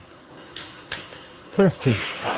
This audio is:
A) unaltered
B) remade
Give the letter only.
B